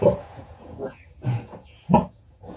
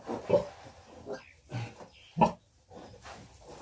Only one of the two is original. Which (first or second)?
second